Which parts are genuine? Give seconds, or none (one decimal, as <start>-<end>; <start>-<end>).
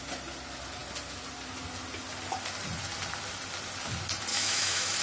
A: 0.0-4.3